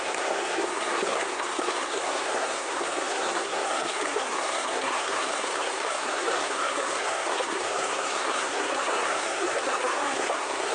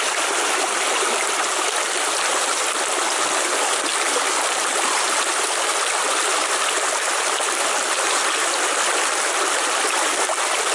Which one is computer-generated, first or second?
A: first